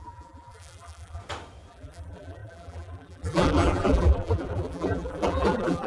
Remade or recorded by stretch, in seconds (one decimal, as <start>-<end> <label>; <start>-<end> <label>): 0.0-1.2 remade; 1.2-1.7 recorded; 1.7-5.9 remade